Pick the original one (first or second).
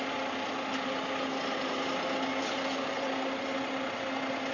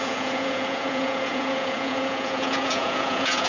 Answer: first